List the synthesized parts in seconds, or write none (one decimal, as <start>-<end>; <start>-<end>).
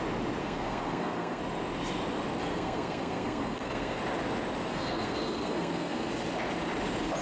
0.4-1.4; 2.5-4.0; 4.7-6.1